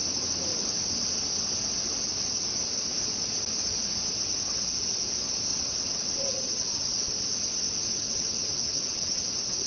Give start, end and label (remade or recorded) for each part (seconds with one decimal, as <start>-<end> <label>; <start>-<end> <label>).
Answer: 0.0-5.5 recorded; 5.5-7.0 remade; 7.0-7.9 recorded; 7.9-9.2 remade; 9.2-9.7 recorded